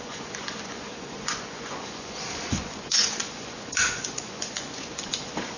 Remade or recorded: remade